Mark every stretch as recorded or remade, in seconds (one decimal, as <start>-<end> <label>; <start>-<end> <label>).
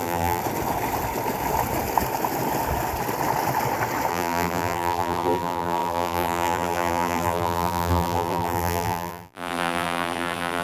0.0-0.4 remade; 0.4-4.1 recorded; 4.1-10.6 remade